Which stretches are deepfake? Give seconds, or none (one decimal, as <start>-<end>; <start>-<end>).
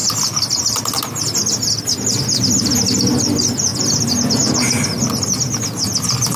none